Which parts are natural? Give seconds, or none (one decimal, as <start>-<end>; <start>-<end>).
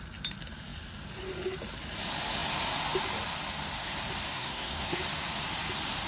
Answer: 0.0-4.3; 5.0-6.1